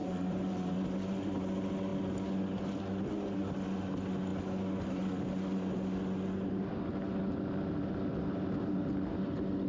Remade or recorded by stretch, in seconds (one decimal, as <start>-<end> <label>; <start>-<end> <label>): 0.0-0.7 remade; 0.7-8.1 recorded; 8.1-8.8 remade; 8.8-9.7 recorded